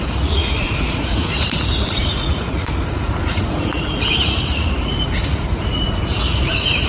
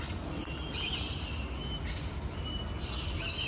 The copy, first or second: first